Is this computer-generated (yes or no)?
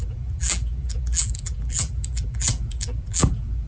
yes